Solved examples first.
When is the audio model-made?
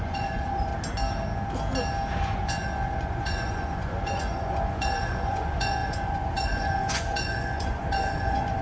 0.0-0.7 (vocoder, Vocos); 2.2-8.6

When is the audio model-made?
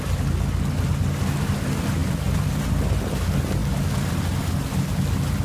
2.0-2.6 (vocoder, BigVGAN v2)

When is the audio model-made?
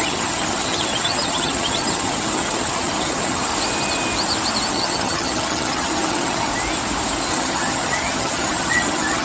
0.0-3.5 (vocoder, HiFi-GAN); 4.7-6.5; 7.3-9.2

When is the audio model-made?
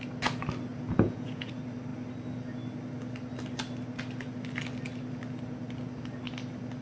0.7-1.5 (vocoder, Vocos)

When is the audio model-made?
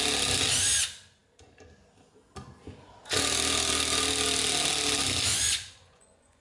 5.3-6.4 (vocoder, Vocos)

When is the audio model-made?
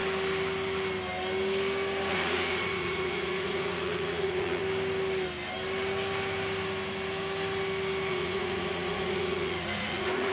2.1-4.6 (vocoder, Vocos); 8.1-10.3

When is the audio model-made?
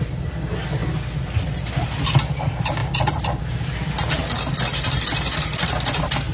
none